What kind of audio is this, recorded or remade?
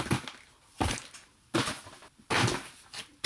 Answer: recorded